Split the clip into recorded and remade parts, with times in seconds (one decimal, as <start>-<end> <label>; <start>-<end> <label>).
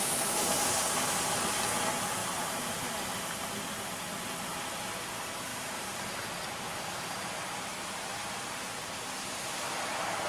0.0-2.2 recorded; 2.2-2.8 remade; 2.8-7.7 recorded; 7.7-8.9 remade; 8.9-10.3 recorded